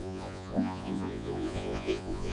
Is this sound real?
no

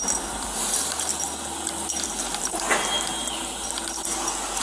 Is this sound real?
yes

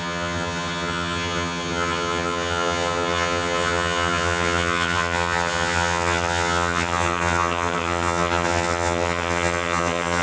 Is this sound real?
no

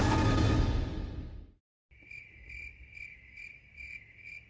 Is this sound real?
yes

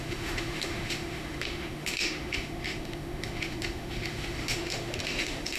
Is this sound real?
no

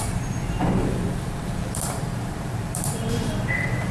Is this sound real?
no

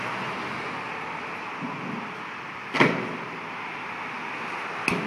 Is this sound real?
yes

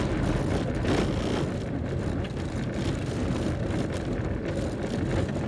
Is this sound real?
yes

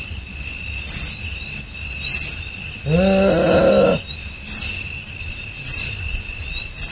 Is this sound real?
yes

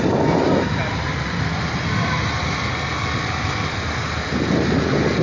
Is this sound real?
yes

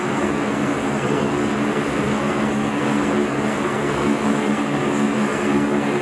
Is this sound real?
no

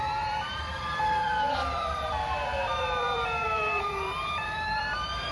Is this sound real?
no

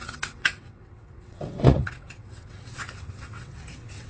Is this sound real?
no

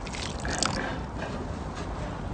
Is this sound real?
yes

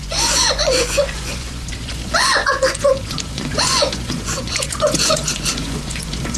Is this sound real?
no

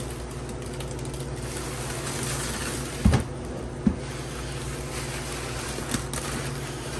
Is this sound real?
yes